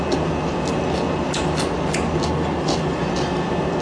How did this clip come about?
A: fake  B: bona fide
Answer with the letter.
B